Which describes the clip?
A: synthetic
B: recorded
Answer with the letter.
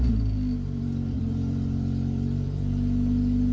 A